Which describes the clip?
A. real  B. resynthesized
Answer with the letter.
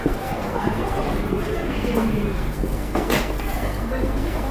B